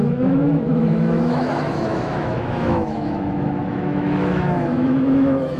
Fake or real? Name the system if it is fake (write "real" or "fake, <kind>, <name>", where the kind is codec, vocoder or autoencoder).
fake, autoencoder, DAC-VAE